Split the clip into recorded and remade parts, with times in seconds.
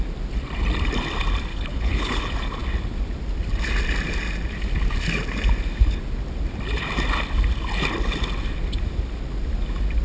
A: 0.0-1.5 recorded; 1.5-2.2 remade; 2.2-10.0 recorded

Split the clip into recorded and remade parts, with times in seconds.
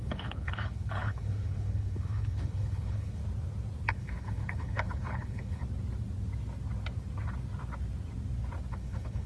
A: 0.0-3.2 remade; 3.2-3.9 recorded; 3.9-5.6 remade; 5.6-8.7 recorded; 8.7-9.3 remade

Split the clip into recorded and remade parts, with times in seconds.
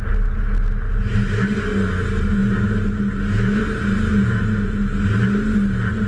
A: 0.0-6.1 recorded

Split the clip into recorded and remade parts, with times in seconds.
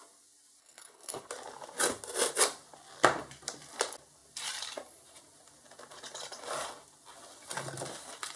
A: 0.0-0.6 recorded; 0.6-1.3 remade; 1.3-8.4 recorded